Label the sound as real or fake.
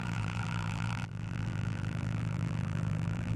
fake